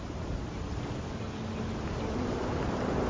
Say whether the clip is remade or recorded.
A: recorded